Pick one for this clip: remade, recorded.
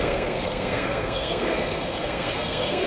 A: remade